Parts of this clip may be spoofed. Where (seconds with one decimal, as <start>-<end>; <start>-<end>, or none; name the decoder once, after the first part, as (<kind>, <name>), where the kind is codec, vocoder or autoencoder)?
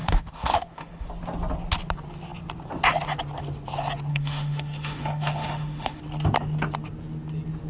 0.0-1.1 (autoencoder, DAC-VAE); 4.1-6.0